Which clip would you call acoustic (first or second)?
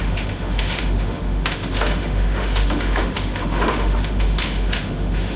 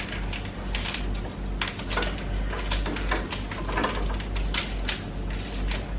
second